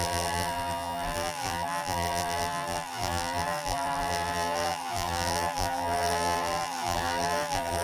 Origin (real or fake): fake